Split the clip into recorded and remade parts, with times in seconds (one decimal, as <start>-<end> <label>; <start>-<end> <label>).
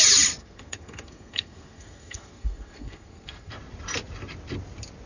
0.0-0.4 recorded; 0.4-3.5 remade; 3.5-5.1 recorded